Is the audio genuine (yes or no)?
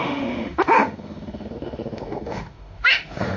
no